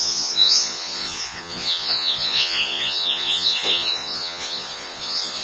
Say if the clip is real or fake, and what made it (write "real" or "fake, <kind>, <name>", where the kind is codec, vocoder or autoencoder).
fake, vocoder, Vocos